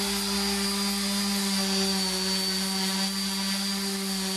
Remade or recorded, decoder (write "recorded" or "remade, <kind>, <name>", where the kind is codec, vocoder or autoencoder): recorded